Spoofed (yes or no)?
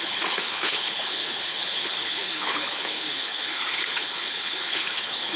yes